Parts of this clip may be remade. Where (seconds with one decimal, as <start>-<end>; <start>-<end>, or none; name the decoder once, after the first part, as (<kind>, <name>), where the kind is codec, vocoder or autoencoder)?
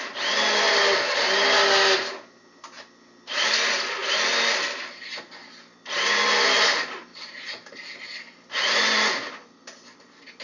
7.1-8.2 (vocoder, BigVGAN v2)